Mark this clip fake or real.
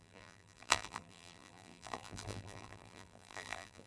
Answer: fake